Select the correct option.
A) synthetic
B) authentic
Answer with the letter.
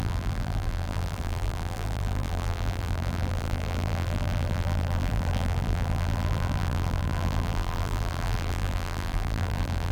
A